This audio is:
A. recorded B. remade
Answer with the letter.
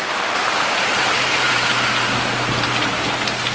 B